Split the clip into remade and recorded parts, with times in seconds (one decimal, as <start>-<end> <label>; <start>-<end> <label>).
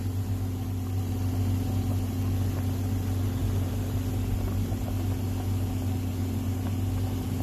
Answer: 0.0-3.4 recorded; 3.4-4.1 remade; 4.1-7.4 recorded